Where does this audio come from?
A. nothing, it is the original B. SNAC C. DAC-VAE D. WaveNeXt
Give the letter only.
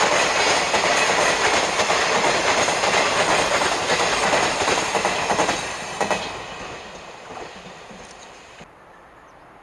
A